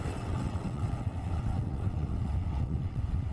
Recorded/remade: remade